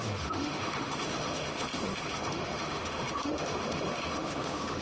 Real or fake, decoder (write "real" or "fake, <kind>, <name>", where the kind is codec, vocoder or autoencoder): fake, autoencoder, DAC-VAE